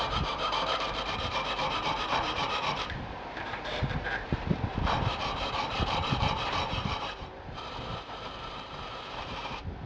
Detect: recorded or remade remade